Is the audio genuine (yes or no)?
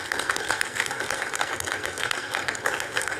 no